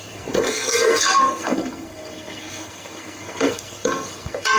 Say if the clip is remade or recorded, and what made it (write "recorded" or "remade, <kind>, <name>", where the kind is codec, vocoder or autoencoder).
remade, codec, SNAC